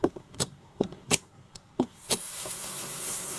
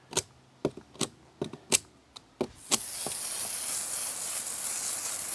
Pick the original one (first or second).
second